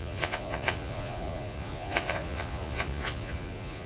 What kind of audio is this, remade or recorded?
remade